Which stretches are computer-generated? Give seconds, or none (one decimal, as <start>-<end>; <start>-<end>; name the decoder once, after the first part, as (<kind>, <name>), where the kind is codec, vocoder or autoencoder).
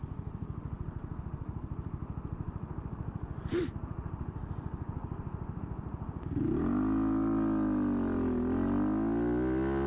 none